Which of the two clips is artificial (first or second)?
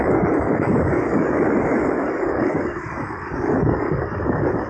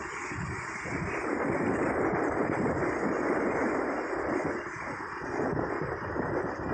first